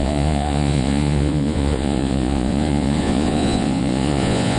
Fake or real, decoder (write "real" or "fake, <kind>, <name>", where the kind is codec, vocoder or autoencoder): fake, vocoder, Vocos